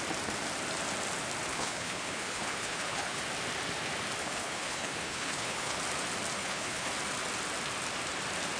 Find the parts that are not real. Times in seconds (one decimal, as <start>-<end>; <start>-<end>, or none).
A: 1.5-3.2; 4.2-5.8; 6.4-6.9

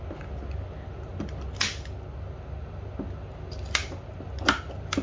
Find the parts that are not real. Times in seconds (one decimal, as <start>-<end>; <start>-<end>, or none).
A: none

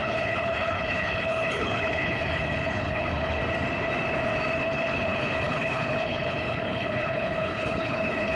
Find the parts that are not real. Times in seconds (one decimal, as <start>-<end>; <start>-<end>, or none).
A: 0.0-3.4; 4.6-8.4

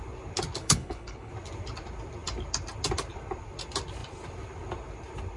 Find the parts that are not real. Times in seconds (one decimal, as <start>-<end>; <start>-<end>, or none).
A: 0.6-1.3

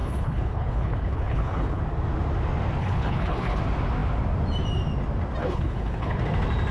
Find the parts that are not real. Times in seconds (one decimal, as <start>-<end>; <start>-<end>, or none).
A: 0.0-1.8; 2.8-3.6; 5.4-6.2

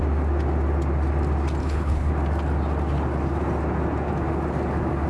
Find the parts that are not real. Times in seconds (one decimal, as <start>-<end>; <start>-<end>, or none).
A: 1.6-2.1

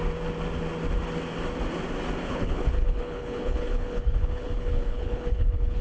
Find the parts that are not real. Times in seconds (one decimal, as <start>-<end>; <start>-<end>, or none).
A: 2.2-5.8

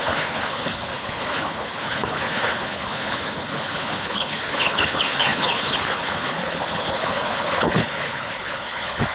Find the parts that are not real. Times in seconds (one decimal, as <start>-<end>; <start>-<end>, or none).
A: 0.0-9.1